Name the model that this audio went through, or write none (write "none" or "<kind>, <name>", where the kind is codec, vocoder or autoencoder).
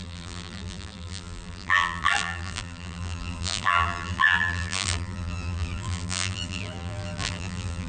vocoder, BigVGAN v2